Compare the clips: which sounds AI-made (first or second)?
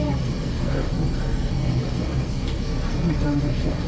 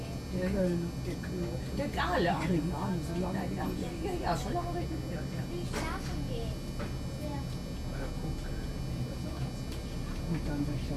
first